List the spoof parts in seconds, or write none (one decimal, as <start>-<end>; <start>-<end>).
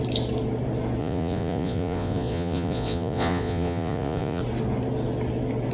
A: 1.0-4.4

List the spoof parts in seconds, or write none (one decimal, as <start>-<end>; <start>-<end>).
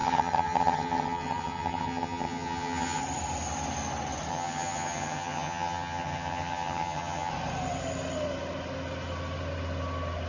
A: 0.0-3.0; 4.3-7.3